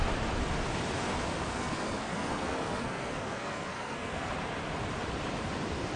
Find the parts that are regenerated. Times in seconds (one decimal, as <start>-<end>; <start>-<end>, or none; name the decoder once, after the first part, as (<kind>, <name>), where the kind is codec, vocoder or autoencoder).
1.5-4.3 (codec, SNAC)